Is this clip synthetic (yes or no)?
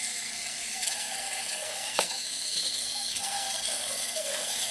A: yes